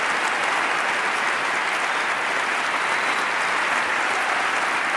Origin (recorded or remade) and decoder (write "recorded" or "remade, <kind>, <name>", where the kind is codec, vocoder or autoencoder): recorded